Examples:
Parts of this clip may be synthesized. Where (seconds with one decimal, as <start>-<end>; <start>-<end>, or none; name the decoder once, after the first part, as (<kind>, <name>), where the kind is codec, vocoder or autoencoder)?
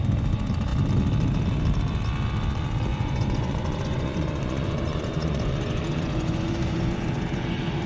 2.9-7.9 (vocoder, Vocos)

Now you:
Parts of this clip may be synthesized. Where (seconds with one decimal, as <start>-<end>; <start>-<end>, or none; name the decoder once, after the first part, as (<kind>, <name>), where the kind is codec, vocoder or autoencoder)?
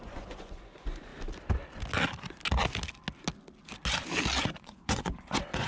0.0-1.1 (vocoder, Vocos); 4.4-5.7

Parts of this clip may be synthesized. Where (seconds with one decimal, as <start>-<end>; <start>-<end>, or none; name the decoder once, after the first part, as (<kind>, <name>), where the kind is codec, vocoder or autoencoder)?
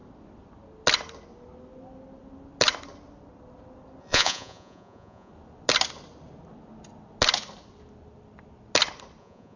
4.0-5.3 (vocoder, Vocos); 9.2-9.6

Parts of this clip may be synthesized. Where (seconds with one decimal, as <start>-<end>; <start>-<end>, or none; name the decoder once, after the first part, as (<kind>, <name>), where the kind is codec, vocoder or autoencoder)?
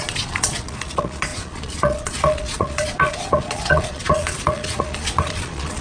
0.0-5.8 (vocoder, Vocos)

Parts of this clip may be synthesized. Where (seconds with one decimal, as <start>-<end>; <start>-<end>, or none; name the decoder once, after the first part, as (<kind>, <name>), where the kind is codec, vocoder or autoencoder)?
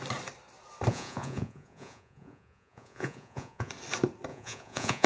0.9-3.7 (vocoder, Vocos); 4.3-5.1